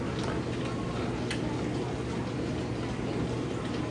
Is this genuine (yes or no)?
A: yes